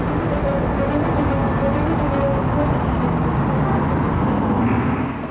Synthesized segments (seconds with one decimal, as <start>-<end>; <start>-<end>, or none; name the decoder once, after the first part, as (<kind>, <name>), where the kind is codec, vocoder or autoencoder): 4.1-5.3 (codec, SNAC)